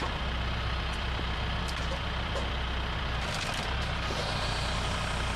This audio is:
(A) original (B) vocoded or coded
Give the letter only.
B